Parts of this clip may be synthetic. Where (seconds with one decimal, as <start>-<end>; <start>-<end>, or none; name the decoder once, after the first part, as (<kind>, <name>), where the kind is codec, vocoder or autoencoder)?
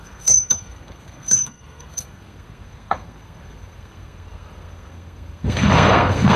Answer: 0.0-6.4 (codec, SNAC)